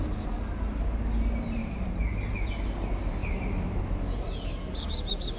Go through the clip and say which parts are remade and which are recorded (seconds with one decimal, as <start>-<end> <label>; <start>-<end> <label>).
0.0-1.6 recorded; 1.6-2.5 remade; 2.5-3.2 recorded; 3.2-3.8 remade; 3.8-5.4 recorded